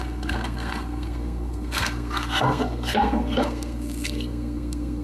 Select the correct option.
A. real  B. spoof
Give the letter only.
B